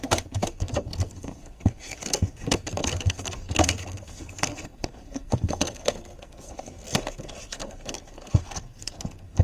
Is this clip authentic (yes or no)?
no